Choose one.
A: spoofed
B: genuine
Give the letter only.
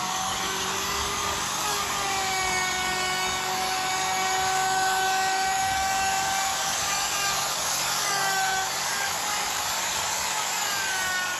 A